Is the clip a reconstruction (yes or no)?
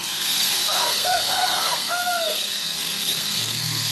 yes